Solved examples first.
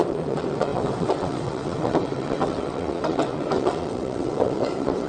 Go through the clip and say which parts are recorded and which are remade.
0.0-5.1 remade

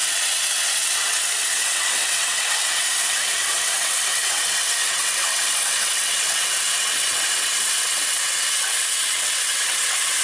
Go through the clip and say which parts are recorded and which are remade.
0.0-10.2 remade